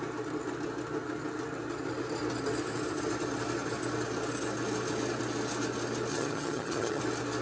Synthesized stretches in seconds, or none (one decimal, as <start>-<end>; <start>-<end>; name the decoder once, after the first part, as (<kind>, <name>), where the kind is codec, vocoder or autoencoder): 6.1-7.0 (vocoder, HiFi-GAN)